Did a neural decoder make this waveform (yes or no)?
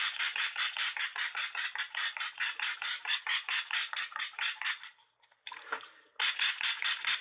no